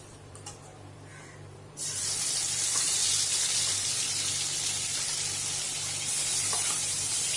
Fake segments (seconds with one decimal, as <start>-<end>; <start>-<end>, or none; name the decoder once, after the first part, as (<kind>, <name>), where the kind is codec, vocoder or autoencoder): 0.0-3.0 (vocoder, BigVGAN v2); 6.1-7.4